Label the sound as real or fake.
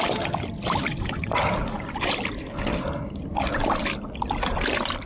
real